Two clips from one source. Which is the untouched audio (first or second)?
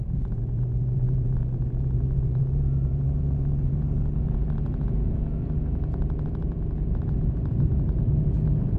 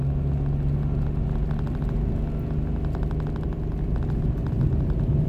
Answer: second